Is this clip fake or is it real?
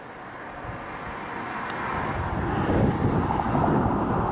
real